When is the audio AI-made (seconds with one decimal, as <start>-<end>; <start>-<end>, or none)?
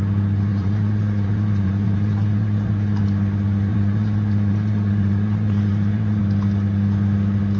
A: 0.5-3.0; 3.7-6.2